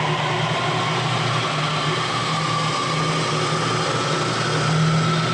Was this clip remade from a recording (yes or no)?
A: no